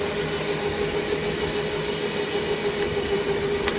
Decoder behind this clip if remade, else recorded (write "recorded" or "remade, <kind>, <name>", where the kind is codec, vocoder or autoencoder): recorded